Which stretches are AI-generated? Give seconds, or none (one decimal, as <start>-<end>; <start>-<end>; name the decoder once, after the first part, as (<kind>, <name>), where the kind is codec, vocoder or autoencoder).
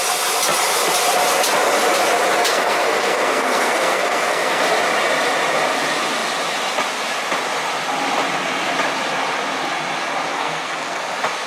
2.5-4.6 (codec, SNAC); 10.3-11.0